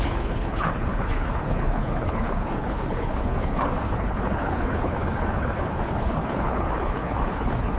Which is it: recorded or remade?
remade